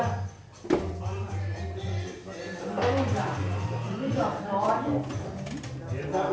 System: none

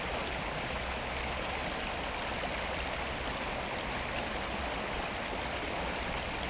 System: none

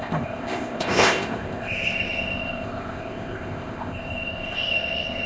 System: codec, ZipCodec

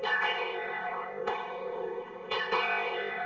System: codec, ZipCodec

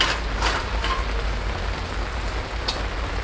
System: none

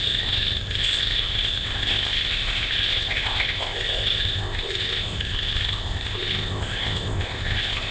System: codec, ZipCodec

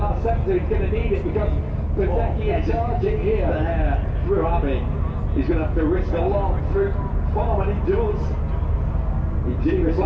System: none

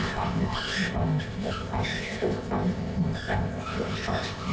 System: codec, ZipCodec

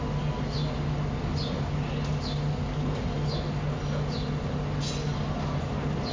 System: none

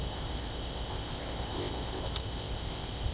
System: codec, ZipCodec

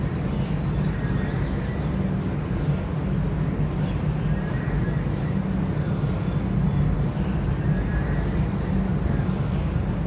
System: none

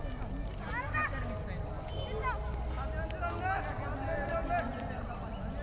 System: none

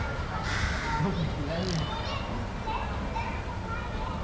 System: none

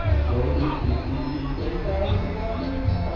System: none